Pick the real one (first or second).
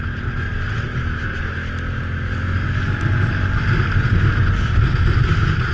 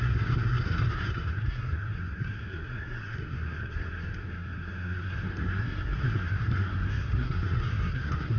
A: first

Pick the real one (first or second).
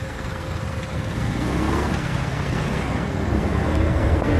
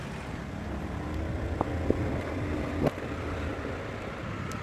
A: second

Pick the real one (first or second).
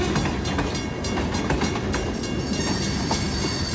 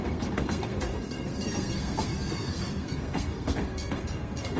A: first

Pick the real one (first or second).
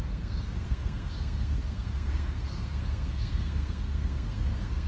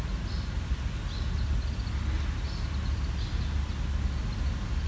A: second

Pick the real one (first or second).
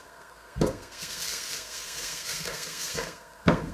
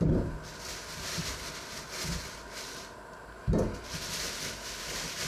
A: second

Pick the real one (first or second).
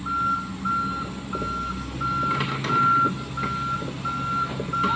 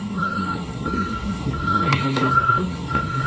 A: first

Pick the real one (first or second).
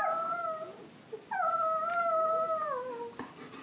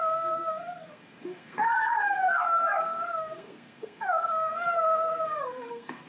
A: first